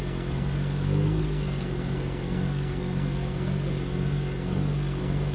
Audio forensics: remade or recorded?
remade